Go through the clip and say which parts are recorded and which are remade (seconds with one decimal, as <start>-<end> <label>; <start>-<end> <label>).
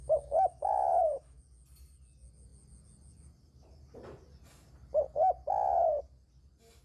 0.0-1.4 remade; 1.4-6.8 recorded